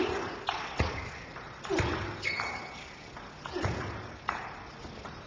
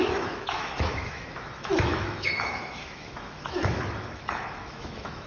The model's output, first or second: second